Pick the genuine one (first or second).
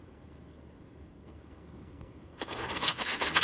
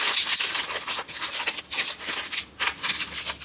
second